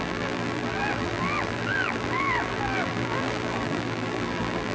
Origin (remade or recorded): remade